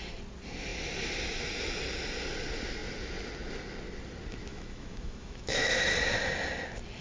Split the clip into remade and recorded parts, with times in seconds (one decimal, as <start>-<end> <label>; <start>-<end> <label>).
0.0-4.5 recorded; 4.5-5.9 remade; 5.9-7.0 recorded